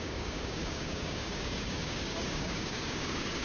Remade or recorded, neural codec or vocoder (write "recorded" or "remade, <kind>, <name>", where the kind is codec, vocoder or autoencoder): remade, codec, DAC